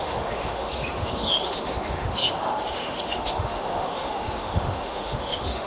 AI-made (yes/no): yes